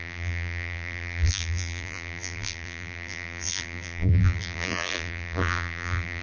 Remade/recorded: remade